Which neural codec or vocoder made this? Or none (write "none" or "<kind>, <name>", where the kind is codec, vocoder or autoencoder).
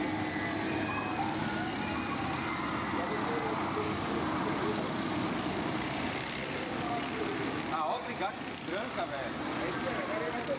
none